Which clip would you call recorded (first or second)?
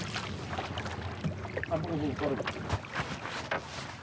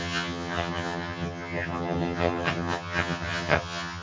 first